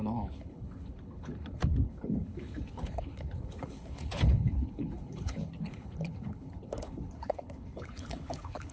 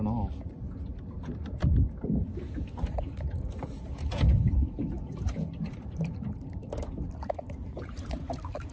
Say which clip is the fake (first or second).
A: first